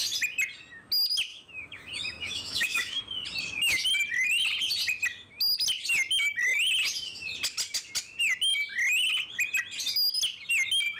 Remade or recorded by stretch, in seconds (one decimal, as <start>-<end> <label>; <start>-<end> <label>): 0.0-1.3 recorded; 1.3-3.0 remade; 3.0-11.0 recorded